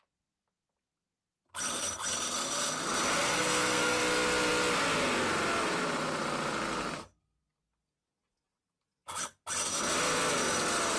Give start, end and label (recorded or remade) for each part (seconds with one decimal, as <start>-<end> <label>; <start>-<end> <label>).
0.0-3.3 recorded; 3.3-4.0 remade; 4.0-11.0 recorded